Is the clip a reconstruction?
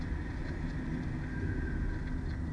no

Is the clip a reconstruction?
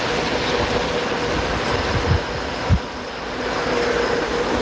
no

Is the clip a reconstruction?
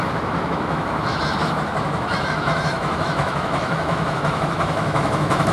yes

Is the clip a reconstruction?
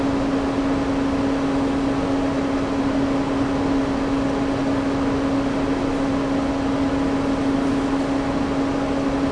no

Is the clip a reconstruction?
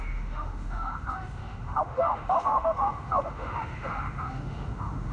yes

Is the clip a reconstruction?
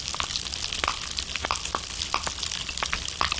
no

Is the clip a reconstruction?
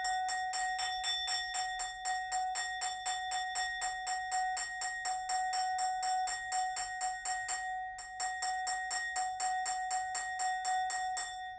no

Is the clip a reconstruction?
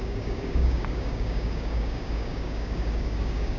yes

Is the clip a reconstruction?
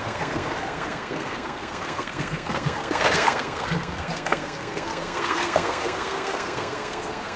yes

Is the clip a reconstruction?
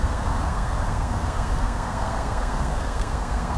yes